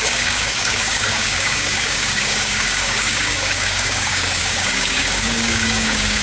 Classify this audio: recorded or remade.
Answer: remade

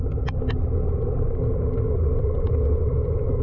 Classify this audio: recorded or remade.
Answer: recorded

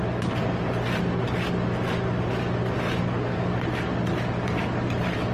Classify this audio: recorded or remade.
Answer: recorded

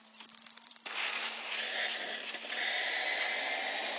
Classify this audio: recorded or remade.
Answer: recorded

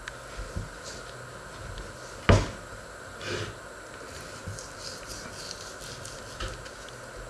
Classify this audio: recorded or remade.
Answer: recorded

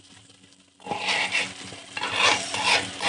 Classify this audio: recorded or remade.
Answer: recorded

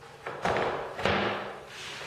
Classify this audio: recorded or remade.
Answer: recorded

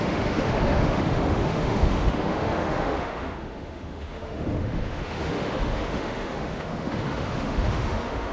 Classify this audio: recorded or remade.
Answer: remade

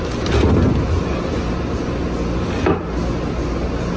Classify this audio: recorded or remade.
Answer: recorded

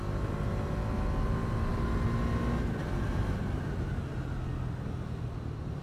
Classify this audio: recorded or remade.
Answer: recorded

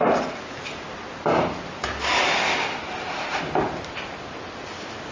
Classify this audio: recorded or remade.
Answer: recorded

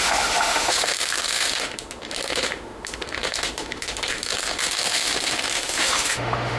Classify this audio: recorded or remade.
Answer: remade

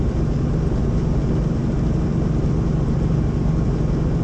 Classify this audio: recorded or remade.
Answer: remade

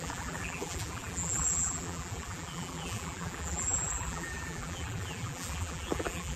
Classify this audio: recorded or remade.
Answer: remade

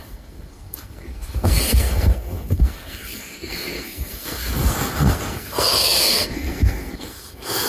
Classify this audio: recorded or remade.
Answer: remade